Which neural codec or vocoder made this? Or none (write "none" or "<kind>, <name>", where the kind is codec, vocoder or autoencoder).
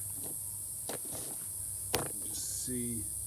none